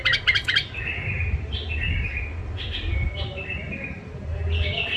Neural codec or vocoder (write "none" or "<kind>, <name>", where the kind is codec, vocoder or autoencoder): none